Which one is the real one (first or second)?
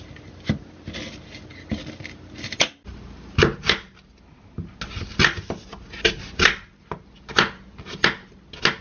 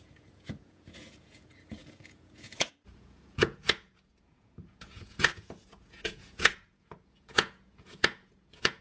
first